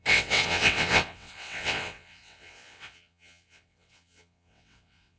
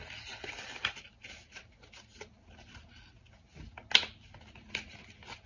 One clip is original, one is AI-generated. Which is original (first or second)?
second